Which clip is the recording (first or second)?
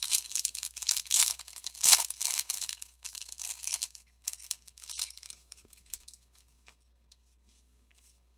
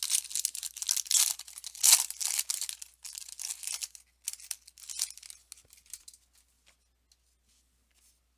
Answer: second